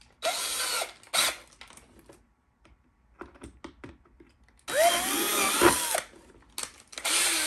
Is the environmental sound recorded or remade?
recorded